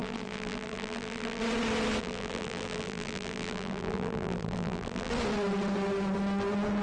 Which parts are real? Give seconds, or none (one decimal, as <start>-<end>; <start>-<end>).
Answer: 1.4-2.0; 5.1-6.8

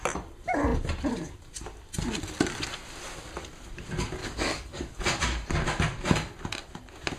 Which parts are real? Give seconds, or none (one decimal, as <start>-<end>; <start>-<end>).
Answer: 0.0-4.2; 5.0-7.2

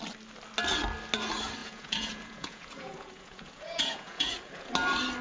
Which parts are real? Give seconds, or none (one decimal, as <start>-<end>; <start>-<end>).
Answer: 0.0-1.6; 4.7-5.2